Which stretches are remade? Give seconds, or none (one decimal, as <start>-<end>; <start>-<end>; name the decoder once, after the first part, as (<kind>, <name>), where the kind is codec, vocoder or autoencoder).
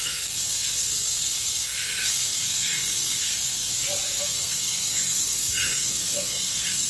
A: 0.0-3.7 (codec, SNAC); 4.2-6.9